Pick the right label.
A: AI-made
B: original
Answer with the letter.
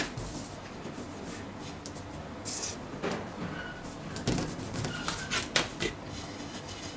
B